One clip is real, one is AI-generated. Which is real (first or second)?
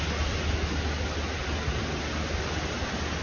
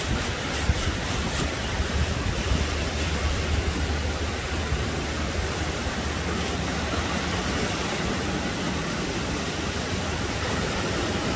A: first